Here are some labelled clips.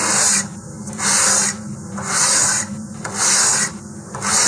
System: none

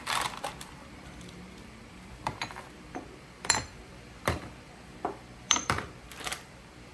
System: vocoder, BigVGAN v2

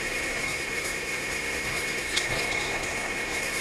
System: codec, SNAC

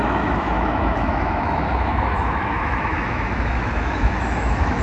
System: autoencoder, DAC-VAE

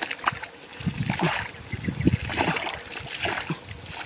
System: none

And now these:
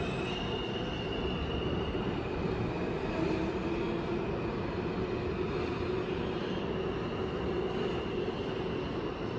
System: none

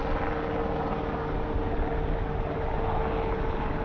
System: none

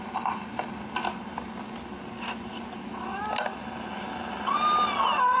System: none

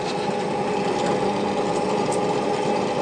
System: none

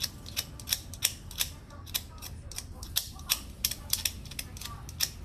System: none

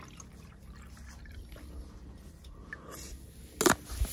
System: none